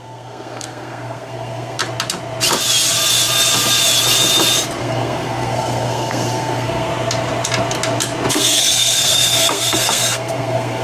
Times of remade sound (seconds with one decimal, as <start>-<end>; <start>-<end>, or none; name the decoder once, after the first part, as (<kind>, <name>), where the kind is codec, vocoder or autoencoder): 0.0-1.8 (codec, SNAC); 4.8-6.9; 8.3-10.8